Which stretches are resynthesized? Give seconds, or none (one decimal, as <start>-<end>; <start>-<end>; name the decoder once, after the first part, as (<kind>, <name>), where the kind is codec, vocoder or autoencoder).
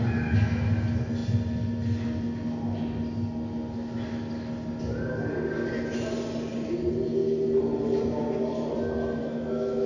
9.2-9.9 (autoencoder, DAC-VAE)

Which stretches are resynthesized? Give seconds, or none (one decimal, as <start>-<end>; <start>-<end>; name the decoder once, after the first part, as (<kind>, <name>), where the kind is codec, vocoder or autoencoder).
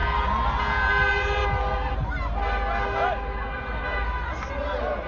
none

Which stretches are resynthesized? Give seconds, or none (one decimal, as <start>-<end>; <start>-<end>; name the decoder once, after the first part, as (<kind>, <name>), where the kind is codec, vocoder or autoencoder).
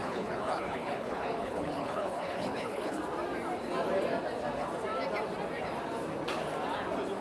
0.0-3.0 (codec, HILCodec)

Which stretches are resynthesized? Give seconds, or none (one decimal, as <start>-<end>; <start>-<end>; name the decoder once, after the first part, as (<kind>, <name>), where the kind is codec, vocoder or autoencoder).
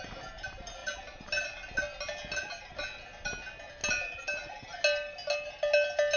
none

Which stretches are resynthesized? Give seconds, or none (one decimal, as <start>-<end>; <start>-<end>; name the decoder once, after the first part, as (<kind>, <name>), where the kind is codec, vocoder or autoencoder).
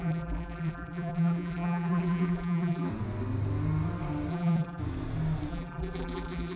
0.0-2.9 (vocoder, BigVGAN v2); 4.3-4.8; 5.5-6.6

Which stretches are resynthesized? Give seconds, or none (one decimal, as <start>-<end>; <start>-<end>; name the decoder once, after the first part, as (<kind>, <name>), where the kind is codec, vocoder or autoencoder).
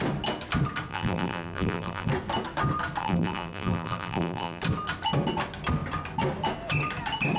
0.9-2.1 (vocoder, BigVGAN v2); 3.0-4.6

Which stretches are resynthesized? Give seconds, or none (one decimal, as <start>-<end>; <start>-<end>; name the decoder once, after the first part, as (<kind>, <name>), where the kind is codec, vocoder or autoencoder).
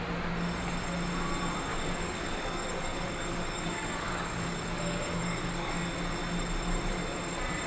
1.7-5.9 (codec, DAC)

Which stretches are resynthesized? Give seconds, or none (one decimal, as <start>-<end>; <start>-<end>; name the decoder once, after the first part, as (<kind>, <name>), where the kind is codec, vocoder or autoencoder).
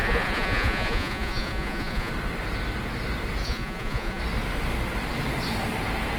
0.0-2.1 (vocoder, Vocos); 3.4-4.2